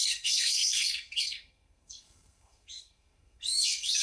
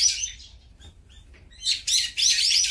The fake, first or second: first